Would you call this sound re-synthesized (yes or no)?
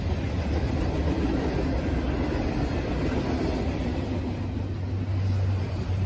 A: no